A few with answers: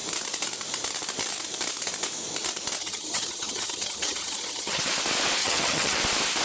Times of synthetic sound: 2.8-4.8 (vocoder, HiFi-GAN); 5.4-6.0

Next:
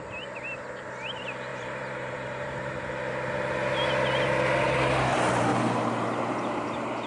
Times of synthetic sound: 1.5-2.9 (vocoder, BigVGAN v2); 5.5-7.1

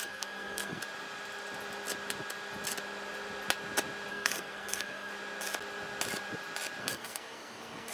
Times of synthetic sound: 0.0-0.8 (codec, SNAC); 4.1-5.1; 6.8-7.9